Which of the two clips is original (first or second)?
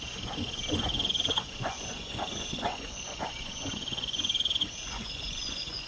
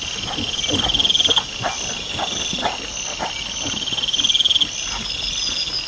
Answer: second